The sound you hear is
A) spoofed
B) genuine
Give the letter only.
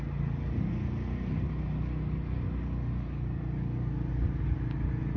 B